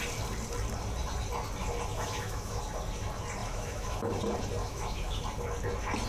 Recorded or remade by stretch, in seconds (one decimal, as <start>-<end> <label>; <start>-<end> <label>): 0.0-1.9 recorded; 1.9-2.6 remade; 2.6-3.4 recorded; 3.4-4.1 remade; 4.1-4.6 recorded; 4.6-5.2 remade; 5.2-6.1 recorded